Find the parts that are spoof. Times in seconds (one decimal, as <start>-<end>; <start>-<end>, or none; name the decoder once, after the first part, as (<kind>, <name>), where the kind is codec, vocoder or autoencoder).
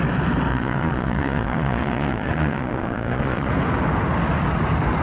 0.5-3.5 (vocoder, Vocos)